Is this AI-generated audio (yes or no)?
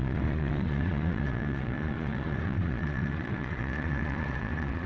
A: yes